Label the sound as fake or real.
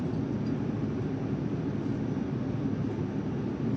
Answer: real